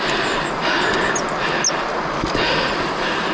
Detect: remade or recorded recorded